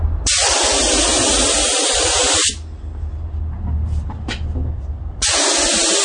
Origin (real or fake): real